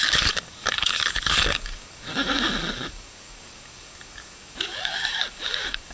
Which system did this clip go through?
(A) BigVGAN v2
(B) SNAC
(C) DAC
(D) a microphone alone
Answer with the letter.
C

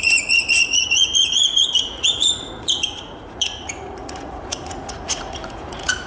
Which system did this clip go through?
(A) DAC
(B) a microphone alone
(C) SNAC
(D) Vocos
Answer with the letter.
D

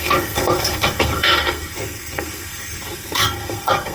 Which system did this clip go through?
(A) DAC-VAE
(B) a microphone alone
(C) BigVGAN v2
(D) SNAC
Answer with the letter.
D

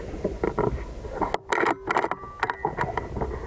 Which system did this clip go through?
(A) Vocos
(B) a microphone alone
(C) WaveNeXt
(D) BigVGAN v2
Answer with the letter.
B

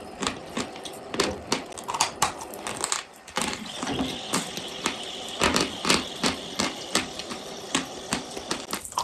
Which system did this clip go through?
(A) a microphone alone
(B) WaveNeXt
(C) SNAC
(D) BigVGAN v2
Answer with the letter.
A